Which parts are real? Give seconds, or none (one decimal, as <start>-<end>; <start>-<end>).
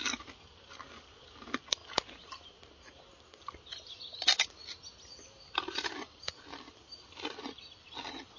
0.0-4.9; 8.0-8.4